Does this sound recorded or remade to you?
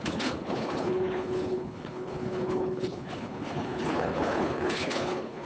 remade